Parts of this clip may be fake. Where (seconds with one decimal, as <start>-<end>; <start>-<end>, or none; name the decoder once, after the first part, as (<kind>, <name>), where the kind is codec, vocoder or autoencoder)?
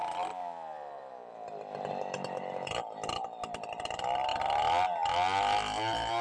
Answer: none